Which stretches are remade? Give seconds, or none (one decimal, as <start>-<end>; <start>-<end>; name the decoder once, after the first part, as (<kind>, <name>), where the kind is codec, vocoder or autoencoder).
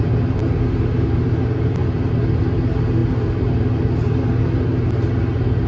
none